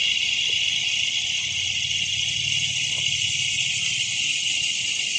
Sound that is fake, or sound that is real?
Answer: real